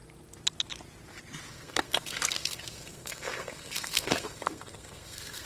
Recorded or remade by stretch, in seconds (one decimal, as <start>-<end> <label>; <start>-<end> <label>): 0.0-1.5 recorded; 1.5-5.5 remade